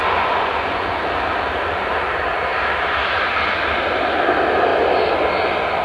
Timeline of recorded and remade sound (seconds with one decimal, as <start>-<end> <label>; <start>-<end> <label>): 0.0-1.0 remade; 1.0-5.8 recorded